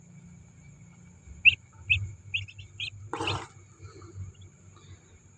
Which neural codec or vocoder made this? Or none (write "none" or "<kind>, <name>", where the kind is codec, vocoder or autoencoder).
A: none